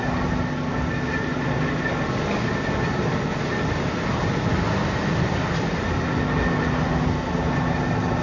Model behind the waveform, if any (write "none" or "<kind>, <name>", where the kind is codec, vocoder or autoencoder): none